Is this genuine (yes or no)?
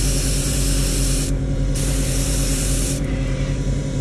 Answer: no